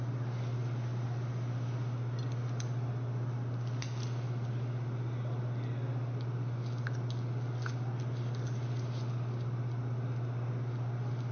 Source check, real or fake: real